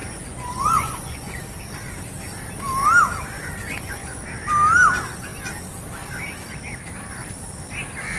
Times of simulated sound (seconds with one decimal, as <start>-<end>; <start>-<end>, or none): 0.0-1.4; 3.6-4.2